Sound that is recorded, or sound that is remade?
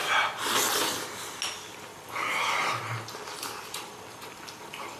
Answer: recorded